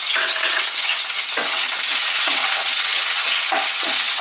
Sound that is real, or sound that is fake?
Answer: fake